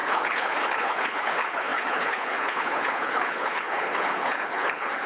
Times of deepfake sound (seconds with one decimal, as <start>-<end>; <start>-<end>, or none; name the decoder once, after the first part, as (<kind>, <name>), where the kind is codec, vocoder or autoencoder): 0.0-5.1 (codec, HILCodec)